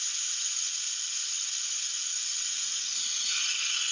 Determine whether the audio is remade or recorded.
recorded